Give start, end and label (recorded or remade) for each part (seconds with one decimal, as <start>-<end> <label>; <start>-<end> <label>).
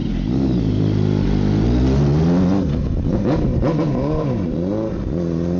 0.0-5.6 recorded